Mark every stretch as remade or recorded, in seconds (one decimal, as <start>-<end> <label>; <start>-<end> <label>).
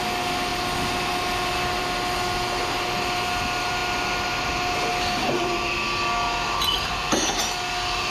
0.0-8.1 recorded